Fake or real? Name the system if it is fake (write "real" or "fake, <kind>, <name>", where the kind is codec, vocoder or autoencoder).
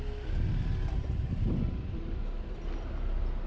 real